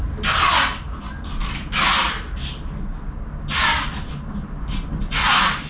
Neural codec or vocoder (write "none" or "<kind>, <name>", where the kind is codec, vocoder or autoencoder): none